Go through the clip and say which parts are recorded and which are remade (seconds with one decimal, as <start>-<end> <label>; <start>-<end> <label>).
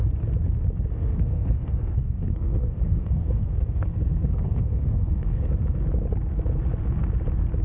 0.0-0.9 recorded; 0.9-5.5 remade; 5.5-7.6 recorded